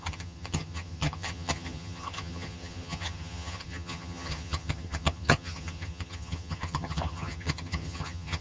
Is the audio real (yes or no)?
no